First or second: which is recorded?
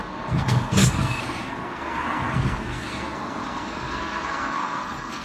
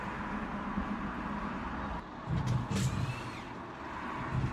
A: second